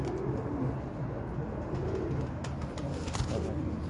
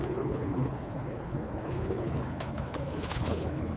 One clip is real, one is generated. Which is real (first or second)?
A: first